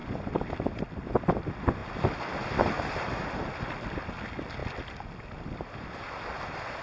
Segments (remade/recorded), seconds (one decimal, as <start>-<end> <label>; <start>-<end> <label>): 0.0-6.8 recorded